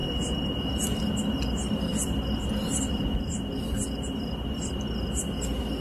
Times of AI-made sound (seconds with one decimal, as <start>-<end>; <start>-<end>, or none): 0.0-0.6